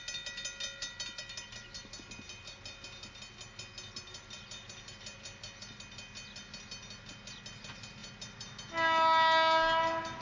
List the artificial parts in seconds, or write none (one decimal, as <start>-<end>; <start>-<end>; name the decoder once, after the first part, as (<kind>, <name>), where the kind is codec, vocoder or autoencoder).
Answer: none